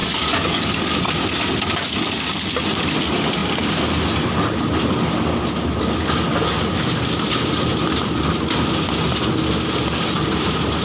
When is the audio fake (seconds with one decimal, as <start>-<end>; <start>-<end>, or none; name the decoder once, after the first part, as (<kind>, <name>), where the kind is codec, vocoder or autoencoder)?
0.0-1.0 (codec, DAC)